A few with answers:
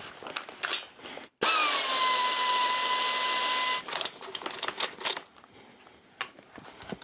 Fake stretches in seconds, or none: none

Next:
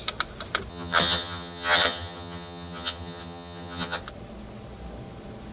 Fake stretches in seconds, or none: 0.7-4.0

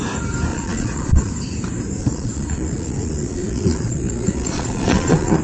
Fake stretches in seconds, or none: 0.5-1.3; 2.0-5.4

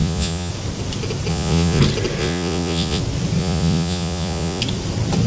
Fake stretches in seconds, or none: 0.0-0.5; 1.3-1.8; 2.2-3.0; 3.4-4.6

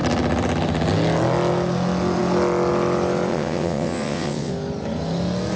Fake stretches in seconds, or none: 3.3-4.5